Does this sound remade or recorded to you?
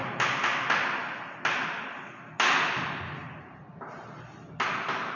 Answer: recorded